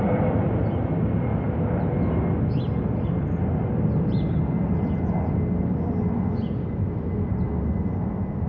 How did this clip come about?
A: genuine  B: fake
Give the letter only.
A